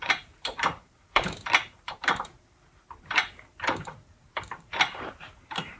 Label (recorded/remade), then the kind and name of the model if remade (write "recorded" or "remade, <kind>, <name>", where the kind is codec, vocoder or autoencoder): remade, vocoder, BigVGAN v2